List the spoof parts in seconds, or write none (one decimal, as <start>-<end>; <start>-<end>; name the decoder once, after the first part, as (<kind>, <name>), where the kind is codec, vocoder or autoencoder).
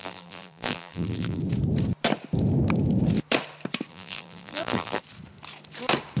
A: 0.0-1.4 (vocoder, BigVGAN v2); 3.9-5.0